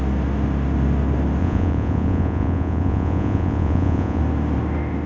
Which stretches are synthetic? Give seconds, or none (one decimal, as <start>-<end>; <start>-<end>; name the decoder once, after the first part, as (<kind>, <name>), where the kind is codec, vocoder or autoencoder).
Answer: 1.4-4.2 (vocoder, Vocos)